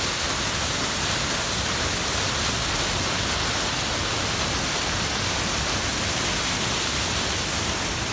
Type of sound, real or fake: real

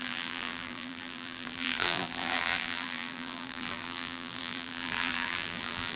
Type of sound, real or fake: fake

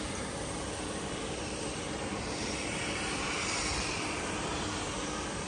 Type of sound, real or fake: fake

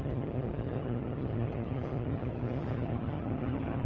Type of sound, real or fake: fake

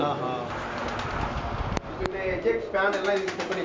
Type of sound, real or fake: real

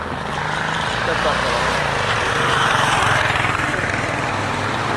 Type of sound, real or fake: real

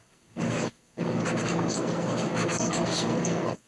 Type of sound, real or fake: fake